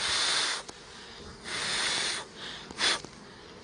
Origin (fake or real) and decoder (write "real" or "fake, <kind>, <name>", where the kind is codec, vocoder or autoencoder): real